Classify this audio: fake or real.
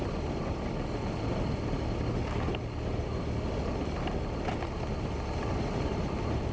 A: real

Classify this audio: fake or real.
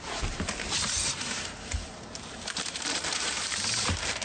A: fake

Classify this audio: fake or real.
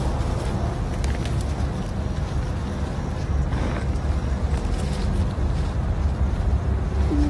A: real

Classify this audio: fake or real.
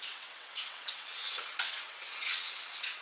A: fake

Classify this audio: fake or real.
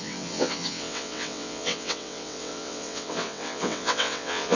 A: fake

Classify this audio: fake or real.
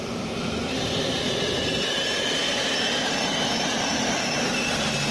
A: fake